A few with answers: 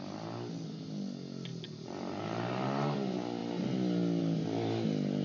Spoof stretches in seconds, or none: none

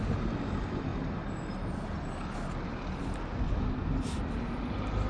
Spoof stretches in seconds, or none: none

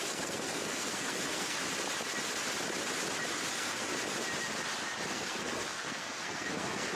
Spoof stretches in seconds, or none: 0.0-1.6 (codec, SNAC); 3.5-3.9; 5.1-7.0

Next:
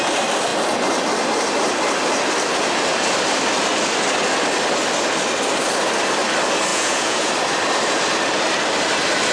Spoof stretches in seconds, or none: 6.7-7.3 (vocoder, Vocos)